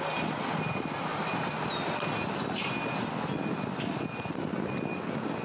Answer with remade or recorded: recorded